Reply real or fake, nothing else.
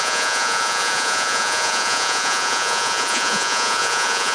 fake